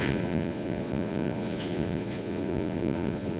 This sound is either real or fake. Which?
fake